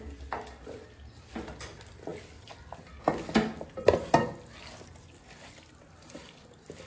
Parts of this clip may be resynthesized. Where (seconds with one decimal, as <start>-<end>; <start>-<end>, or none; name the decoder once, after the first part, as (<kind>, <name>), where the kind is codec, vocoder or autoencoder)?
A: none